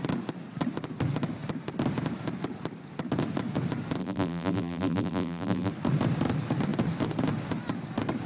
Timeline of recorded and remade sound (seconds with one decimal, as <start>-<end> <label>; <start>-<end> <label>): 0.0-4.0 recorded; 4.0-5.7 remade; 5.7-8.3 recorded